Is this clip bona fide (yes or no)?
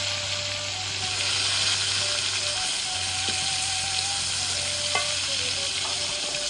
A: yes